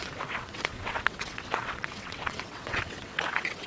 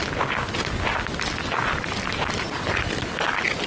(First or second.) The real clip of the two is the second